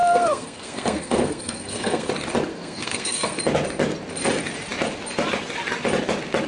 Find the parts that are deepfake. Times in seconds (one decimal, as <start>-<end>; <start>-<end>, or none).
0.0-2.1; 2.5-3.4